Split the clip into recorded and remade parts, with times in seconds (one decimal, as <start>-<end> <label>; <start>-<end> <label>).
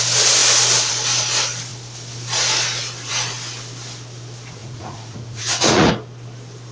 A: 0.0-4.6 recorded; 4.6-5.9 remade; 5.9-6.7 recorded